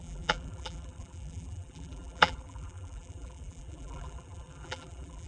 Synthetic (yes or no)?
yes